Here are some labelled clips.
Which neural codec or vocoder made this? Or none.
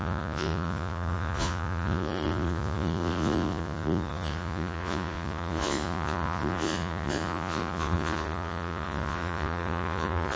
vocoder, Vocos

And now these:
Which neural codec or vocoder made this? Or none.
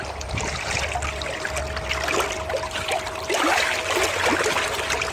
none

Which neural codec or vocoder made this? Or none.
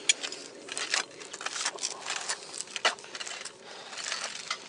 none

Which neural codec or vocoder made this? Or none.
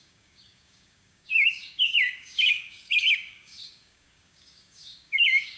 codec, DAC